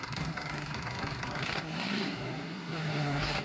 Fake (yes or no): yes